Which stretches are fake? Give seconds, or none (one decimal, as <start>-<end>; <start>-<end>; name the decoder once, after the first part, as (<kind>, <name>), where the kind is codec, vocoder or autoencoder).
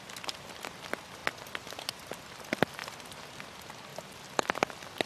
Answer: none